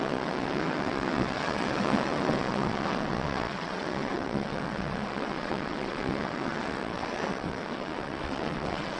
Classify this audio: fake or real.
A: fake